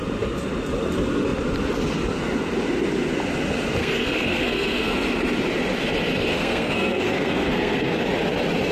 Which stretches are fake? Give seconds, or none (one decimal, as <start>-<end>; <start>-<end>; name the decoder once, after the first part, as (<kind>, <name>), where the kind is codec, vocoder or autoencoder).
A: 3.8-4.9 (codec, SNAC); 6.3-8.0